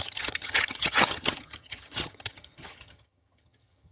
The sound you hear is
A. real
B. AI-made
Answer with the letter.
B